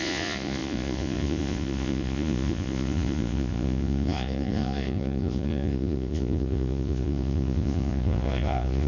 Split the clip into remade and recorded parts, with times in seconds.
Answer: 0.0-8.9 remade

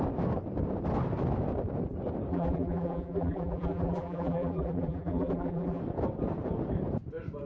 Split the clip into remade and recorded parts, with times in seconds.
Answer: 0.0-2.3 recorded; 2.3-5.8 remade; 5.8-7.5 recorded

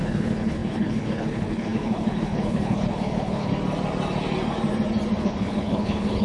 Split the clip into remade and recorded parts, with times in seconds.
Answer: 0.0-3.5 remade; 3.5-5.2 recorded; 5.2-6.2 remade